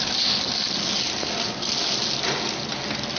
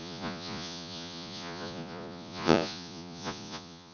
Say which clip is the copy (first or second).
second